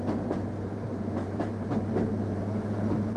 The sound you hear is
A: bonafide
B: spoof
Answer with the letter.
B